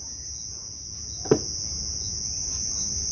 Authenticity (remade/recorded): recorded